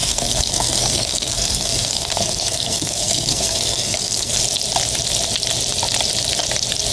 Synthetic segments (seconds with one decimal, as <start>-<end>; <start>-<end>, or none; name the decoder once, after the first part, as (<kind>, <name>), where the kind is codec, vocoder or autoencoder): 0.0-4.4 (codec, SNAC)